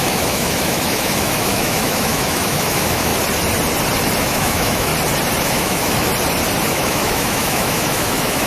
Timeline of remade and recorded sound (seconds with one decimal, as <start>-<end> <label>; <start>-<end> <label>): 0.0-3.1 remade; 3.1-4.2 recorded; 4.2-4.9 remade; 4.9-5.4 recorded; 5.4-6.1 remade; 6.1-6.7 recorded; 6.7-8.5 remade

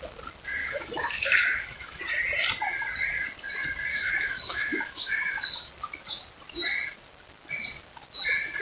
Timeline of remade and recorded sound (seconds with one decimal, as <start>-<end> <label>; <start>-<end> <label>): 0.0-0.6 recorded; 0.6-2.0 remade; 2.0-3.9 recorded; 3.9-5.7 remade; 5.7-8.6 recorded

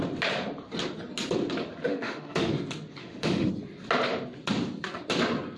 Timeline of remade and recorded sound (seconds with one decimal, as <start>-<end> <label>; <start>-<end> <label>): 0.0-1.9 recorded; 1.9-2.5 remade; 2.5-3.0 recorded; 3.0-3.5 remade; 3.5-5.6 recorded